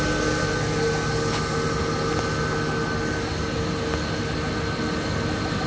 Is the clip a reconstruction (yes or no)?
no